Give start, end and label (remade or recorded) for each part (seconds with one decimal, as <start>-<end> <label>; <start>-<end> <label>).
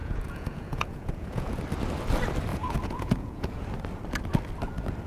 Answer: 0.0-1.6 remade; 1.6-2.5 recorded; 2.5-3.6 remade; 3.6-5.1 recorded